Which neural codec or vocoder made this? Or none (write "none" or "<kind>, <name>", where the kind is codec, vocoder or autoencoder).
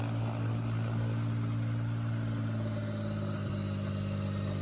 none